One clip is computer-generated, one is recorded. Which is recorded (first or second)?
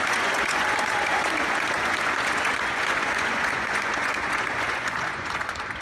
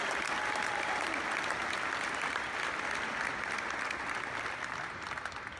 second